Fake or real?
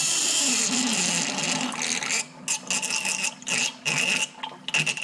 real